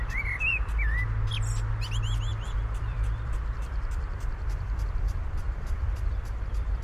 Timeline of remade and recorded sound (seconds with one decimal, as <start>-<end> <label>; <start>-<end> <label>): 0.0-2.3 recorded; 2.3-6.8 remade